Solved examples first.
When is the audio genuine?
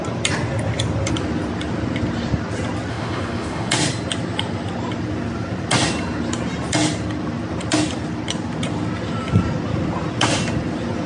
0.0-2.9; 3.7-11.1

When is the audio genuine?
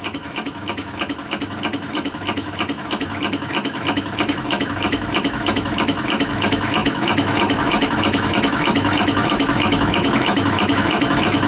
none